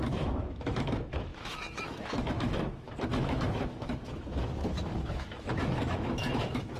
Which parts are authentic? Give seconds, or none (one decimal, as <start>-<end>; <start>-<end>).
none